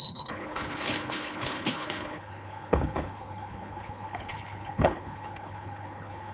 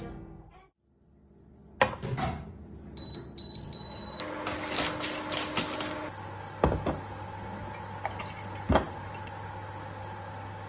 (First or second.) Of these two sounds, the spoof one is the first